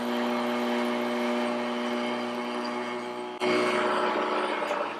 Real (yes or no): yes